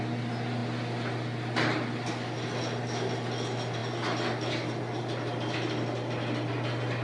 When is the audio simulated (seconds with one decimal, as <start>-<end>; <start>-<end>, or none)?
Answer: none